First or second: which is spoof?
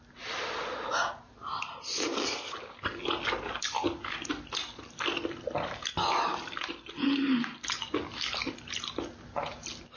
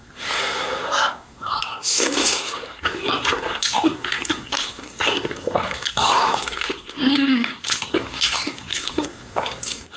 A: second